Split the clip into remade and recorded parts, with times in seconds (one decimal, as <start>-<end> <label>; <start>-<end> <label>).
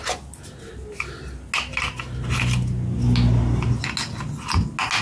0.0-5.0 recorded